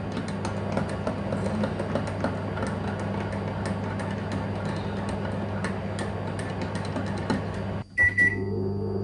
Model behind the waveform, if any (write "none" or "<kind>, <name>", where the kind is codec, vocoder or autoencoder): none